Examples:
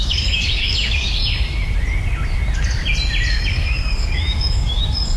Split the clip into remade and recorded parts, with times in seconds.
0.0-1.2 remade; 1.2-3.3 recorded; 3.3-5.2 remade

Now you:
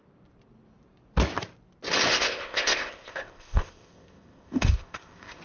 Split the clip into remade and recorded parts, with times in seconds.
0.0-2.1 recorded; 2.1-5.4 remade

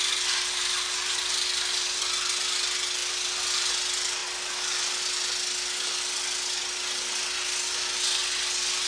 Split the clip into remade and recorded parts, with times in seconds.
0.0-8.9 recorded

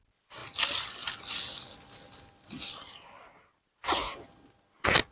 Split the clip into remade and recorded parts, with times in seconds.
0.0-5.1 recorded

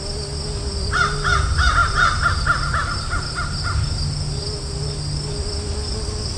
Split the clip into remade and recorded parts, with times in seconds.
0.0-6.4 recorded